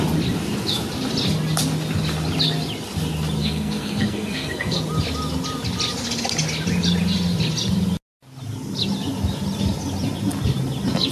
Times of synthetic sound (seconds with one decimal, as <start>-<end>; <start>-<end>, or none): 3.4-4.8